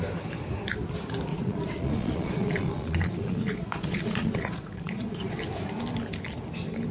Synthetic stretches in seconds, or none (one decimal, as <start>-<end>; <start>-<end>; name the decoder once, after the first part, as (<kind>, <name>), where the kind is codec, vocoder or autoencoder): 1.3-5.4 (vocoder, Vocos)